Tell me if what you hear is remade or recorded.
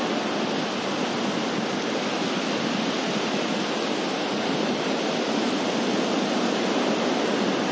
recorded